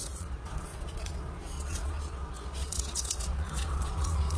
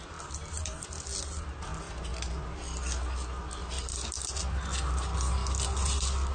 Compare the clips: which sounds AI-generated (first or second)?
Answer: first